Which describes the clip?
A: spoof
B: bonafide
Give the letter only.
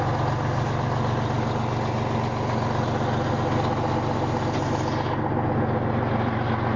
B